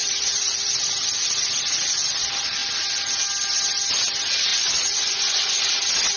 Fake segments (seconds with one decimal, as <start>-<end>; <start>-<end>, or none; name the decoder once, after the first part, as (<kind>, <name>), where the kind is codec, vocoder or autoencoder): 4.5-5.7 (vocoder, Vocos)